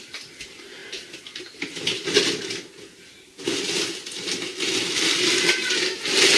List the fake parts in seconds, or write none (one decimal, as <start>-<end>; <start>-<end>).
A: 4.5-5.7

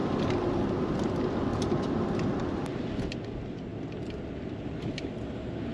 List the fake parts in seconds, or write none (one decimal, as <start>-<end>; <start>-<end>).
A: 0.0-0.5; 1.5-2.7

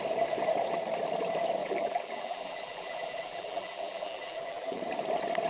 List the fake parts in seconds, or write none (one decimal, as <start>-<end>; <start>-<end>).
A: 1.6-4.8